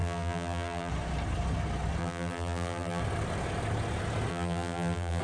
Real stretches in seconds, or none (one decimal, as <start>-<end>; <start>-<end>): 0.9-2.0; 3.0-4.3